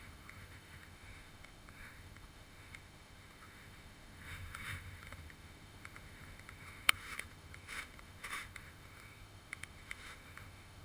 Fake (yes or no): yes